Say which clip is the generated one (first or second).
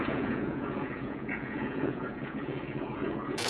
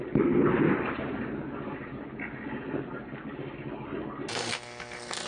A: first